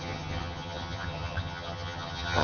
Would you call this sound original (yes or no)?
no